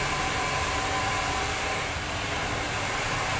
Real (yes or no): no